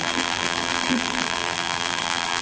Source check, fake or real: fake